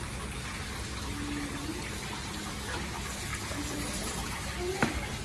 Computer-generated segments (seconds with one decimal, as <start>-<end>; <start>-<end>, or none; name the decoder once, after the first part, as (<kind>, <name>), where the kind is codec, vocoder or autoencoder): 3.3-5.2 (vocoder, BigVGAN v2)